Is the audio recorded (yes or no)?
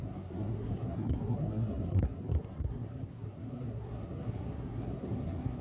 no